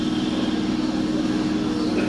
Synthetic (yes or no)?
no